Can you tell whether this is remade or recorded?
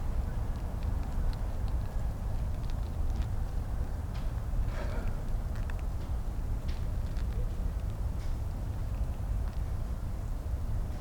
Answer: remade